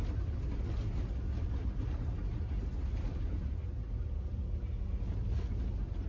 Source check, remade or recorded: recorded